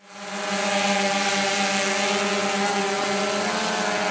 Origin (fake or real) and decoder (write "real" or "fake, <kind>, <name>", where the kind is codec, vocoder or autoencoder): real